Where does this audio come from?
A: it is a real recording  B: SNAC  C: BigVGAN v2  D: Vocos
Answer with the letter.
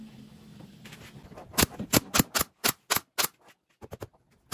A